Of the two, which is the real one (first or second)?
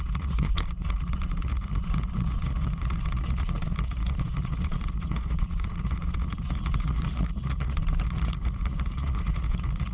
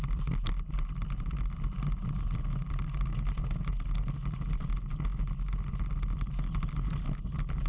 second